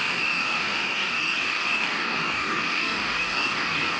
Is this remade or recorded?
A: remade